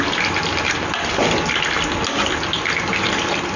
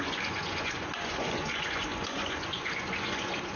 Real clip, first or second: first